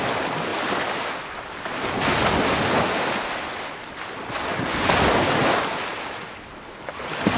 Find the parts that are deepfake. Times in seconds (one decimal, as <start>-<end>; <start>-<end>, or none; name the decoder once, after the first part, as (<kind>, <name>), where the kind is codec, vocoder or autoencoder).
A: none